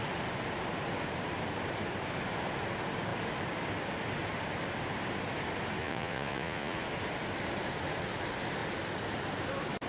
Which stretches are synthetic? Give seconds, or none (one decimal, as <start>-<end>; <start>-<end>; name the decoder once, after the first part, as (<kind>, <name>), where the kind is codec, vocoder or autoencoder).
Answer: 5.8-6.8 (vocoder, Vocos)